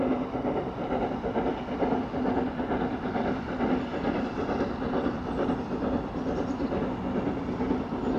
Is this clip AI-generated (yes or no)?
no